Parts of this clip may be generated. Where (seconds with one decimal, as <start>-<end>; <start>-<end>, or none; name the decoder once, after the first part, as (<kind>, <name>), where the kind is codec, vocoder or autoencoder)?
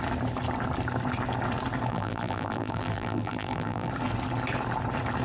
1.9-3.9 (vocoder, BigVGAN v2)